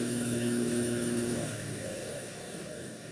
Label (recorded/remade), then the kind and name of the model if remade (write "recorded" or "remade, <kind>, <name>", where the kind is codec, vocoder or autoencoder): remade, codec, DAC